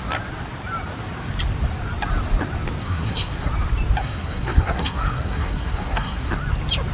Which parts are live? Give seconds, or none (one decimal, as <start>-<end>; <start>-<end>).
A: 0.0-2.8; 3.5-4.0; 6.3-6.9